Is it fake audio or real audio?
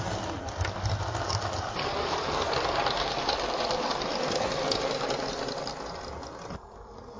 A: real